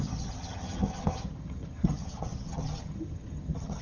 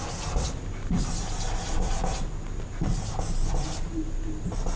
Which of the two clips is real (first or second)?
second